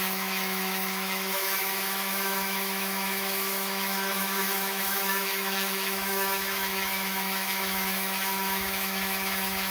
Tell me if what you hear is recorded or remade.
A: remade